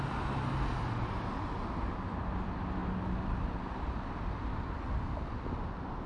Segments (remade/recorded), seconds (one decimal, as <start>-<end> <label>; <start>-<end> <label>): 0.0-6.1 recorded

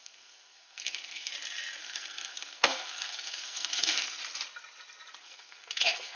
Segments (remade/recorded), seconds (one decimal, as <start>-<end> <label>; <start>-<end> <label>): 0.0-1.3 remade; 1.3-1.8 recorded; 1.8-4.2 remade; 4.2-5.2 recorded; 5.2-6.2 remade

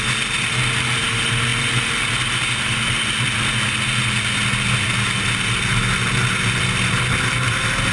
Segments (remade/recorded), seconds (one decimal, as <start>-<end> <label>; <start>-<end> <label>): 0.0-7.9 recorded

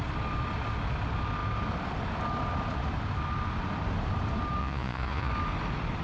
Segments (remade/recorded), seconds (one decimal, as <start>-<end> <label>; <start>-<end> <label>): 0.0-4.6 recorded; 4.6-5.3 remade; 5.3-6.0 recorded

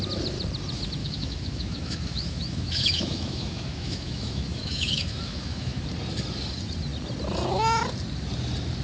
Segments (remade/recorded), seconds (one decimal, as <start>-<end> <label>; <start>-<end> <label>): 0.0-1.0 recorded; 1.0-5.8 remade; 5.8-8.8 recorded